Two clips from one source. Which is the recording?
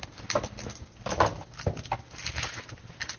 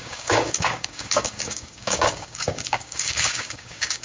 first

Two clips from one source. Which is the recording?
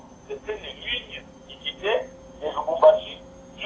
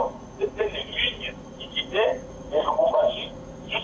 first